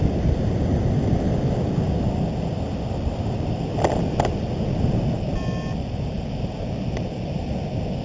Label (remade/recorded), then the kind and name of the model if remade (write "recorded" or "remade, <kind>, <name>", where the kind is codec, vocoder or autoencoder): recorded